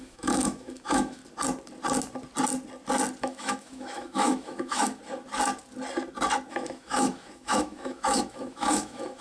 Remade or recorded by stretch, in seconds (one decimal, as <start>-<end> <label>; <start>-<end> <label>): 0.0-1.2 remade; 1.2-3.2 recorded; 3.2-5.0 remade; 5.0-6.5 recorded; 6.5-9.2 remade